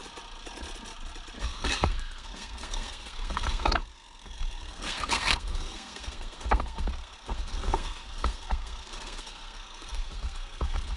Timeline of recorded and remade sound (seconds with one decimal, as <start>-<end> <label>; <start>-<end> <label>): 0.0-1.4 recorded; 1.4-11.0 remade